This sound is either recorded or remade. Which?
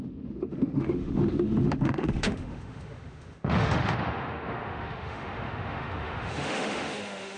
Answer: remade